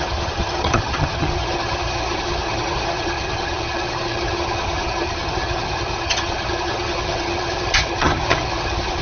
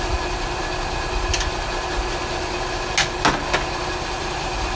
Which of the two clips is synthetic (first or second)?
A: first